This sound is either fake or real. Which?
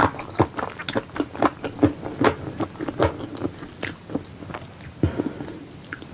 real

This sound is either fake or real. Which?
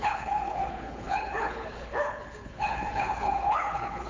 fake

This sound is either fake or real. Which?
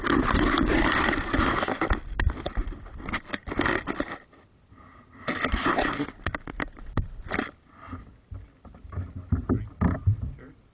real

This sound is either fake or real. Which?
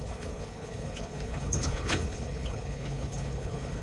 fake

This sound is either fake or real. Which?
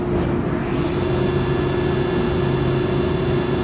real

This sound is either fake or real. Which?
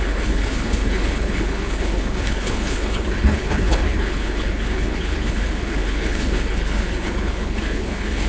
fake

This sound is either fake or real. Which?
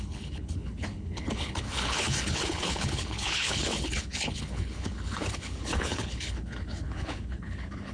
fake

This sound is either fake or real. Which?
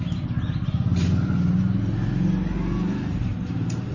real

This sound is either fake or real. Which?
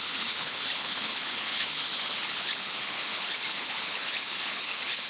fake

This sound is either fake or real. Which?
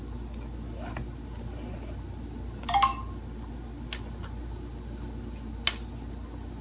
real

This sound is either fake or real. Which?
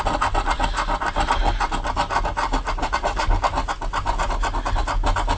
real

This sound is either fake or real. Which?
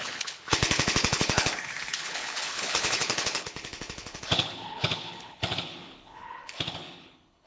fake